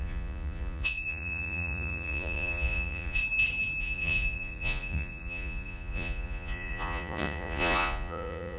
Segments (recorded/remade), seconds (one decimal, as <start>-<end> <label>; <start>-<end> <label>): 0.0-3.2 remade; 3.2-3.8 recorded; 3.8-8.6 remade